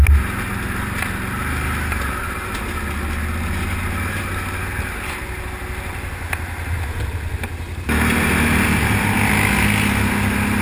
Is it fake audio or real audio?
real